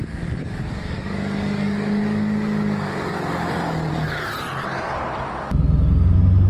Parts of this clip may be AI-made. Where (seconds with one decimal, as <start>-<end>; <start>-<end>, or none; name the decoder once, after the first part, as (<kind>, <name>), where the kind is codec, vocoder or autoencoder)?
0.0-3.9 (codec, DAC)